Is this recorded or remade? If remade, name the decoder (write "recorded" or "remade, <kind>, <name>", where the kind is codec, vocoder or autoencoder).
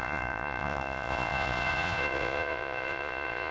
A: remade, vocoder, Vocos